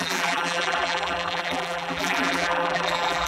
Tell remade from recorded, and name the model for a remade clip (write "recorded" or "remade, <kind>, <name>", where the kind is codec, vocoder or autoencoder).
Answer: remade, vocoder, BigVGAN v2